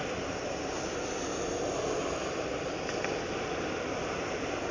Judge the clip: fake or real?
real